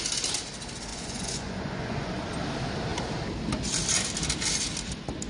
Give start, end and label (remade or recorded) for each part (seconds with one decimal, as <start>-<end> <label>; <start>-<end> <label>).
0.0-0.9 recorded; 0.9-2.2 remade; 2.2-5.3 recorded